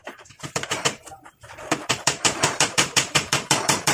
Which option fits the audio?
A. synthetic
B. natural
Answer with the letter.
A